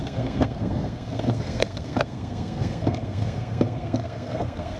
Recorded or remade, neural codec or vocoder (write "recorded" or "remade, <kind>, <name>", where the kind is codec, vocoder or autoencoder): remade, codec, SNAC